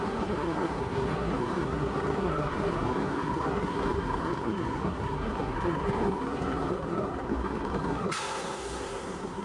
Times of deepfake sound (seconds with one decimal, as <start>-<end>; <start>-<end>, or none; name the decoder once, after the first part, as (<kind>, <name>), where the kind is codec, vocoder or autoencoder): 0.0-9.4 (codec, SNAC)